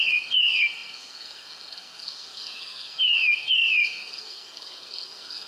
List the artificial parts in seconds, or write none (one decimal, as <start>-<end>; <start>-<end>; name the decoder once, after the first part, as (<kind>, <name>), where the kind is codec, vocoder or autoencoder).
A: 0.0-5.5 (codec, SNAC)